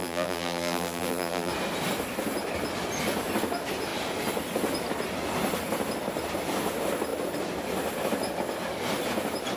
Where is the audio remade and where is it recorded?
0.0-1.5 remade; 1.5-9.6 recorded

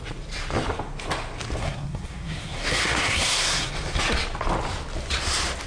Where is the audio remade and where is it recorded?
0.0-1.6 recorded; 1.6-3.7 remade; 3.7-5.7 recorded

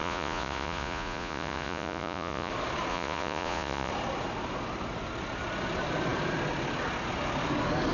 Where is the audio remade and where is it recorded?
0.0-2.5 remade; 2.5-2.9 recorded; 2.9-3.9 remade; 3.9-7.9 recorded